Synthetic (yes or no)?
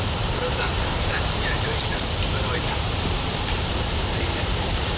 yes